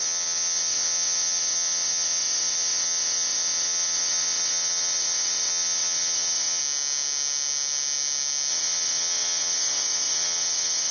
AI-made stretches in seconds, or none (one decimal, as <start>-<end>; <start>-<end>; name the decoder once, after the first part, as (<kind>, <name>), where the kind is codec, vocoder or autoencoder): 0.0-6.6 (vocoder, WaveNeXt); 8.5-10.9